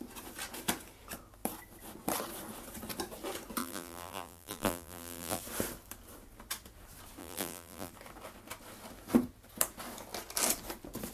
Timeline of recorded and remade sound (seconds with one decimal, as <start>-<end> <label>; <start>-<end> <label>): 0.0-3.6 recorded; 3.6-5.4 remade; 5.4-7.2 recorded; 7.2-7.9 remade; 7.9-11.1 recorded